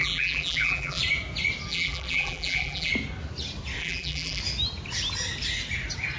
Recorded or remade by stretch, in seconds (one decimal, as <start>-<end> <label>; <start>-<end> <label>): 0.0-1.0 remade; 1.0-1.7 recorded; 1.7-2.9 remade; 2.9-3.8 recorded; 3.8-4.4 remade; 4.4-6.2 recorded